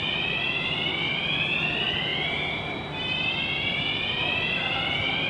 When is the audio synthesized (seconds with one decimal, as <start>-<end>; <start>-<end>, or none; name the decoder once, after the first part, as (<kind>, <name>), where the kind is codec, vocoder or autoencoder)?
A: none

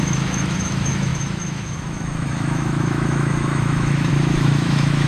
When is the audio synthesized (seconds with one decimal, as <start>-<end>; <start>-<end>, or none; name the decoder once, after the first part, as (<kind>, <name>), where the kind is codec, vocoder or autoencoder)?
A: 0.0-5.1 (autoencoder, DAC-VAE)

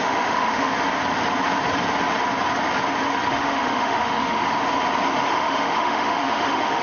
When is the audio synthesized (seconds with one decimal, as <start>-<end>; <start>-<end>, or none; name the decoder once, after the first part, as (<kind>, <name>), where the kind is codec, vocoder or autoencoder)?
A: 0.0-0.7 (autoencoder, DAC-VAE); 3.3-4.6; 5.3-6.8

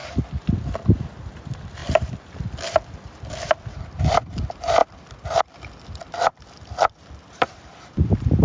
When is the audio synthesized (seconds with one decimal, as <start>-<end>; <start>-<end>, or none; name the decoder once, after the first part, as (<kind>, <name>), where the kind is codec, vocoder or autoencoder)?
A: 1.1-4.8 (vocoder, BigVGAN v2); 5.4-8.4

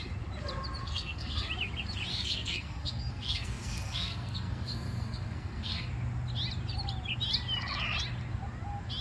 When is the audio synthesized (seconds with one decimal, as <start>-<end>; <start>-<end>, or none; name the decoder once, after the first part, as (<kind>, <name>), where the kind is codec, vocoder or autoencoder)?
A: 0.8-1.5 (codec, SNAC); 2.1-5.9

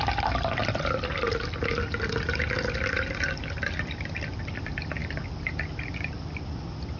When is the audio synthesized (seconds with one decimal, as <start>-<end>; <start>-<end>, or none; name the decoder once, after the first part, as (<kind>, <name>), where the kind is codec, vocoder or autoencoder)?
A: none

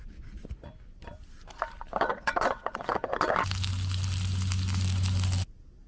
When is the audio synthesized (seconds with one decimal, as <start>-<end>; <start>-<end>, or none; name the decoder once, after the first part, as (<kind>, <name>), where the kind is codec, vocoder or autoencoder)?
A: 2.1-3.0 (vocoder, WaveNeXt)